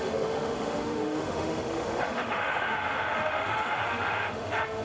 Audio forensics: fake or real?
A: fake